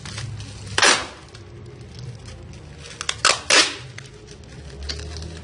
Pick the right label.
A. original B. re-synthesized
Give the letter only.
A